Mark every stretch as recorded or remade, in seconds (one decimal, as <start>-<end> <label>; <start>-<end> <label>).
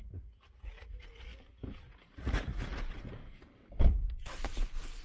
0.0-1.3 remade; 1.3-1.9 recorded; 1.9-3.2 remade; 3.2-3.9 recorded; 3.9-5.0 remade